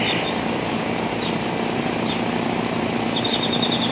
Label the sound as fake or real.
real